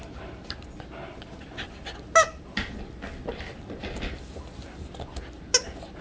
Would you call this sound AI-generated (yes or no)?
no